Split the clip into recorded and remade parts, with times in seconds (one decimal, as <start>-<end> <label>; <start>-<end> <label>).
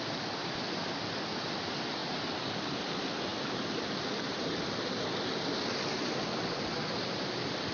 0.0-7.7 recorded